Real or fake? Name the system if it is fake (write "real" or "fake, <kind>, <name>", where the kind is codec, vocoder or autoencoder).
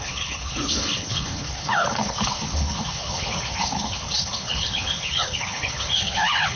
fake, codec, HILCodec